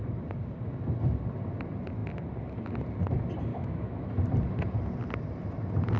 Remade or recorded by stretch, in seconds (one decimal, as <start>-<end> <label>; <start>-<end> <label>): 0.0-3.5 recorded; 3.5-4.1 remade; 4.1-6.0 recorded